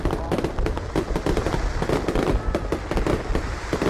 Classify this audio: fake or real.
real